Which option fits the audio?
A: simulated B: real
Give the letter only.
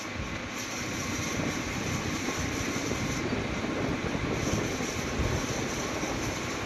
B